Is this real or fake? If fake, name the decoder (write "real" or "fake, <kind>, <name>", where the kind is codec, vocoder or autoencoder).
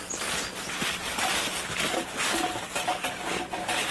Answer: real